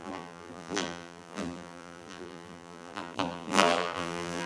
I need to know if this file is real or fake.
fake